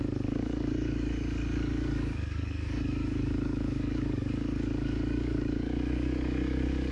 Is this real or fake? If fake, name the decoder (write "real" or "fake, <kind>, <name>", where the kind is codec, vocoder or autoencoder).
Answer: fake, codec, DAC